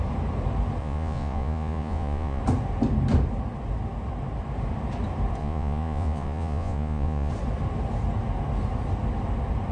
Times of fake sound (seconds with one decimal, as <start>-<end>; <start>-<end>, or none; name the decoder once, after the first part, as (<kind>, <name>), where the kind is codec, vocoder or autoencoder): 0.8-2.4 (vocoder, Vocos); 5.4-7.3